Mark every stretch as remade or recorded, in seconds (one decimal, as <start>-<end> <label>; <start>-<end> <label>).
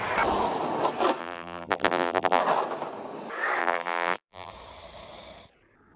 0.0-1.2 recorded; 1.2-2.4 remade; 2.4-3.6 recorded; 3.6-4.5 remade; 4.5-6.0 recorded